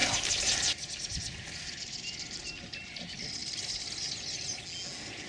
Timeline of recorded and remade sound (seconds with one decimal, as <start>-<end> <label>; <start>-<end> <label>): 0.0-2.6 remade; 2.6-3.4 recorded; 3.4-3.9 remade; 3.9-5.3 recorded